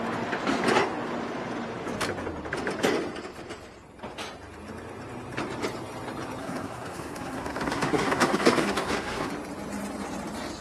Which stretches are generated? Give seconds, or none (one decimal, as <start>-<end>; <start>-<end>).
6.4-9.3